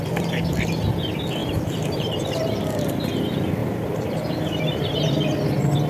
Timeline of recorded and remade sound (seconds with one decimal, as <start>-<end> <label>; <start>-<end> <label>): 0.0-1.4 recorded; 1.4-2.6 remade; 2.6-3.6 recorded; 3.6-5.1 remade; 5.1-5.9 recorded